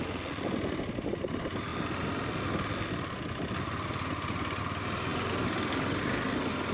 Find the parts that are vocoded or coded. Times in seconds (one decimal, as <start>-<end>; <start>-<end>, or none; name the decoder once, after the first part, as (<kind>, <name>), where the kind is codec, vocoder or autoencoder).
5.1-6.0 (vocoder, BigVGAN v2)